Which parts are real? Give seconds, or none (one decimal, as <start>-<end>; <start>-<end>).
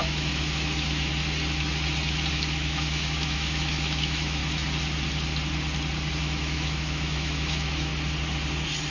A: 1.1-2.3; 4.4-6.2; 7.9-8.9